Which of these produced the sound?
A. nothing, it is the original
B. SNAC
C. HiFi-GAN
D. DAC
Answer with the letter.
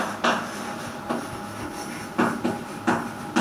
A